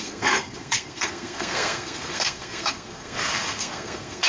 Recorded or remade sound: remade